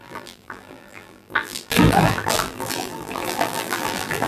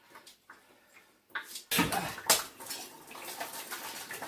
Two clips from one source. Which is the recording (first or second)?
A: second